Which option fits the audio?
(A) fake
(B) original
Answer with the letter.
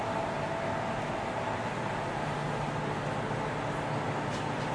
B